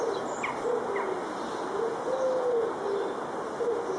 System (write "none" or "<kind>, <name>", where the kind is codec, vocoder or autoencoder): none